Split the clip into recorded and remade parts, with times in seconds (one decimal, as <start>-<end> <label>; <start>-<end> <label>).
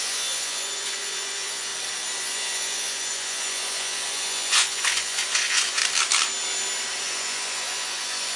0.0-1.7 remade; 1.7-2.2 recorded; 2.2-5.8 remade; 5.8-7.0 recorded; 7.0-8.4 remade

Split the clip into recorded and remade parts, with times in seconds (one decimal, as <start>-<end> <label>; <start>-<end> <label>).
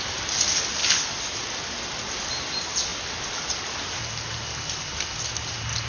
0.0-5.9 recorded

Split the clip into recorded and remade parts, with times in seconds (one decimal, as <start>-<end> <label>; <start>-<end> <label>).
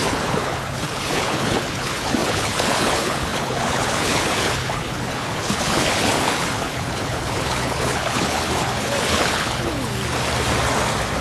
0.0-10.0 remade; 10.0-11.2 recorded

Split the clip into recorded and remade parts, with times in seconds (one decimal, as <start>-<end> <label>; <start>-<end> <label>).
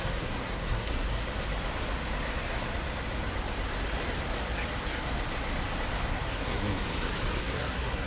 0.0-1.2 remade; 1.2-6.1 recorded; 6.1-6.6 remade; 6.6-7.4 recorded; 7.4-8.1 remade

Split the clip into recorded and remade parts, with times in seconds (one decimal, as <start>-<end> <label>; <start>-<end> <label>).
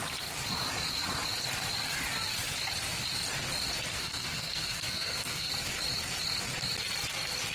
0.0-3.9 recorded; 3.9-5.5 remade; 5.5-7.5 recorded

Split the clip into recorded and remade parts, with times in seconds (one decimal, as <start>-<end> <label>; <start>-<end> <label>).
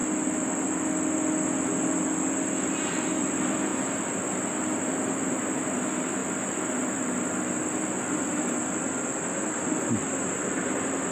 0.0-3.7 recorded; 3.7-4.8 remade; 4.8-11.1 recorded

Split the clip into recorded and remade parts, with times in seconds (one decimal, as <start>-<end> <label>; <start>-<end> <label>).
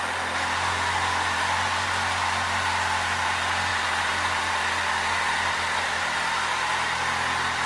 0.0-7.7 recorded